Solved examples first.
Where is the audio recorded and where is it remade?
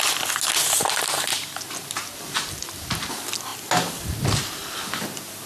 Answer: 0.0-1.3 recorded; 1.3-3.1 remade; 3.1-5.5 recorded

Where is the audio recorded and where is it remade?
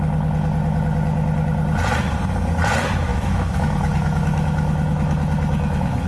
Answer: 0.0-3.1 recorded; 3.1-6.1 remade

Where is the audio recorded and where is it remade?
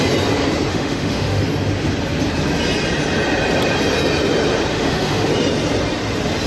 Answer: 0.0-0.7 recorded; 0.7-1.4 remade; 1.4-4.7 recorded; 4.7-5.3 remade; 5.3-6.5 recorded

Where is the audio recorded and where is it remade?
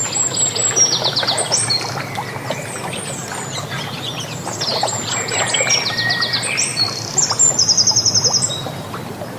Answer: 0.0-9.4 recorded